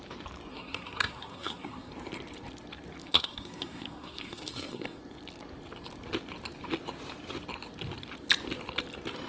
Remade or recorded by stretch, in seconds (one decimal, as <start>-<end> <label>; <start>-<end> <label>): 0.0-0.5 recorded; 0.5-1.9 remade; 1.9-3.0 recorded; 3.0-5.0 remade; 5.0-9.3 recorded